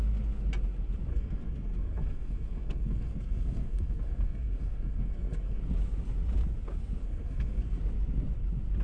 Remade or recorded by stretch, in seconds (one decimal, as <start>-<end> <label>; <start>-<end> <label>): 0.0-1.1 recorded; 1.1-5.6 remade; 5.6-7.0 recorded; 7.0-7.8 remade; 7.8-8.8 recorded